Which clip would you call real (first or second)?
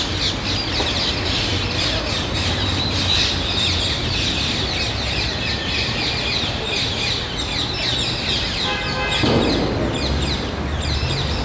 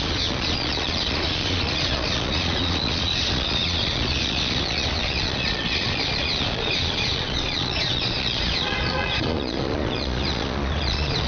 first